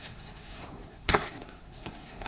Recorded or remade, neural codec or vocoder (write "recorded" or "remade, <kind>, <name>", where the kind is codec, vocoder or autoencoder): remade, codec, SNAC